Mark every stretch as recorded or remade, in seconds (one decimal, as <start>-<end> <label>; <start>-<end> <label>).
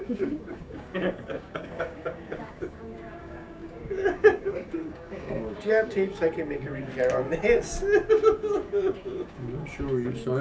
0.0-6.9 remade; 6.9-8.1 recorded; 8.1-10.4 remade